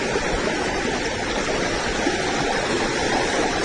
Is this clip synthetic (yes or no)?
no